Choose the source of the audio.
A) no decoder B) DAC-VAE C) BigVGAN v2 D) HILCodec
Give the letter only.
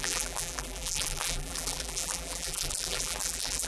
C